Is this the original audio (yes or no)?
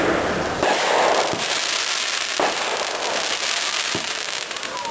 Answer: yes